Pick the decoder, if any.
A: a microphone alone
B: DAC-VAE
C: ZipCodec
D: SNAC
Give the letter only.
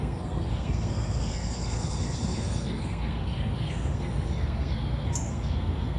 D